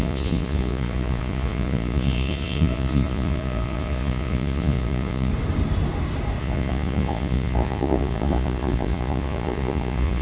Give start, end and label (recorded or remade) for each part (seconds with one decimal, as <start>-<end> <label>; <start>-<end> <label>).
0.0-5.3 remade; 5.3-6.4 recorded; 6.4-10.2 remade